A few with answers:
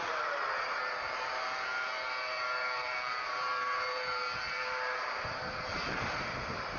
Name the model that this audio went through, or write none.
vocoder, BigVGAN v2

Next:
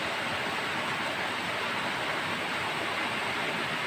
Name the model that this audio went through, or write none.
none